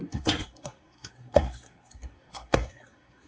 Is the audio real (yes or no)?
no